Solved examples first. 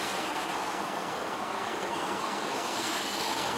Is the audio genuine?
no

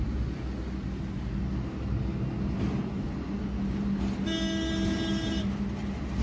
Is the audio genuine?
yes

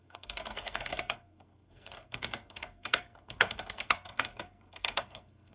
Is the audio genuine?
no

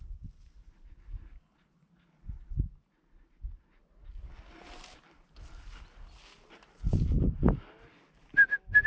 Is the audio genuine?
yes